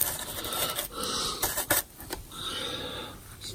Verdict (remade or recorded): recorded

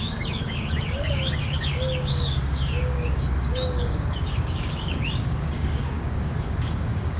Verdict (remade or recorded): remade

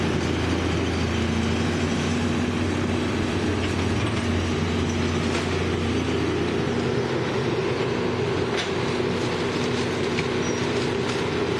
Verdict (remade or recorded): recorded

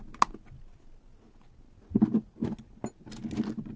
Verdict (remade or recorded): recorded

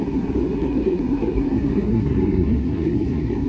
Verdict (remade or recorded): remade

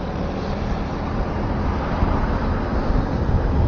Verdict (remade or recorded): recorded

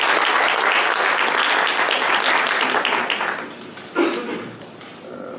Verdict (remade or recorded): recorded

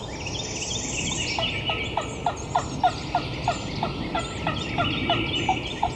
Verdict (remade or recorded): recorded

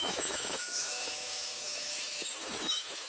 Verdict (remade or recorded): remade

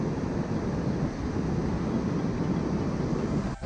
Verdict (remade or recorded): recorded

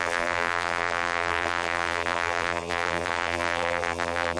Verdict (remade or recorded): remade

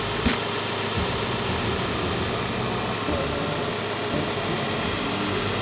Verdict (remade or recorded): recorded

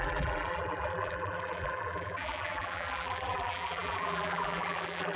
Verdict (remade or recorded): remade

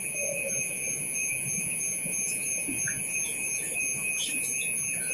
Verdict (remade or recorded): remade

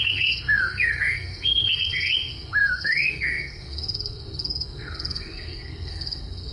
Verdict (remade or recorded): remade